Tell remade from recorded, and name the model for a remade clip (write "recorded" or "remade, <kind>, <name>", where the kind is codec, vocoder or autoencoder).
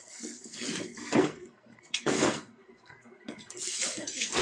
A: remade, codec, SNAC